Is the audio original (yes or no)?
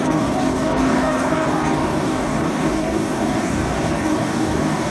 no